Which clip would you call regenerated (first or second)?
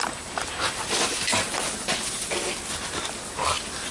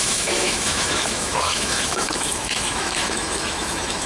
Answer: second